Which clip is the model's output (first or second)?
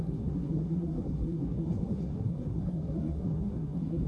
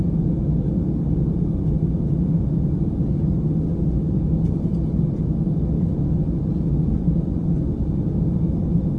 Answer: first